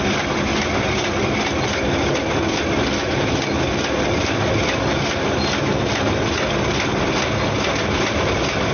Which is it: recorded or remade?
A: recorded